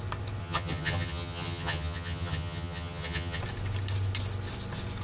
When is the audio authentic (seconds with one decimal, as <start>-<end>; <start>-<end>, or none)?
0.0-0.4; 3.4-5.0